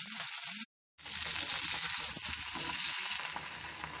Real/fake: real